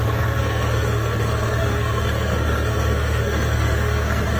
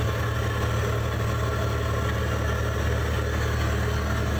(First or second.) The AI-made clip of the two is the first